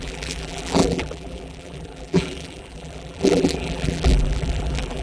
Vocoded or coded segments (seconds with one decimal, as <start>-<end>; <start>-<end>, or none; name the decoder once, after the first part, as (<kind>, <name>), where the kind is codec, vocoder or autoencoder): 0.0-5.0 (vocoder, BigVGAN v2)